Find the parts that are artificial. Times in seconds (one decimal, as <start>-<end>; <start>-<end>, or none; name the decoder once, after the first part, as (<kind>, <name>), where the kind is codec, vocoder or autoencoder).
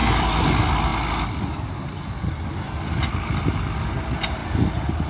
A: 0.0-0.5 (autoencoder, DAC-VAE)